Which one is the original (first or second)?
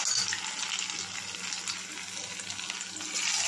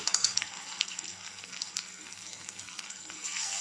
first